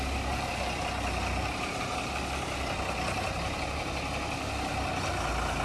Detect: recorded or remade recorded